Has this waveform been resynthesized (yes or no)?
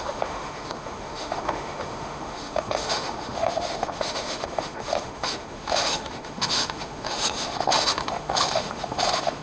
yes